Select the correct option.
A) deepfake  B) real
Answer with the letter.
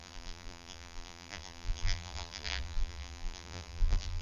A